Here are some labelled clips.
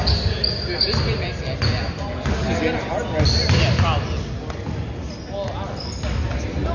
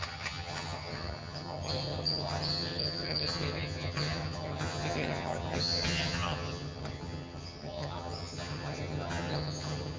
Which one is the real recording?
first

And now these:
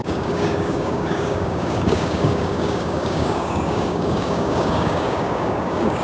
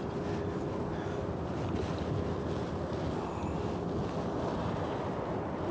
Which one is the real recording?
second